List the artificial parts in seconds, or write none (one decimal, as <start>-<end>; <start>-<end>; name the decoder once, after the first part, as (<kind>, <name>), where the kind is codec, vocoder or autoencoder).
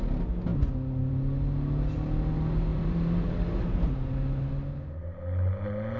2.7-3.8 (vocoder, BigVGAN v2)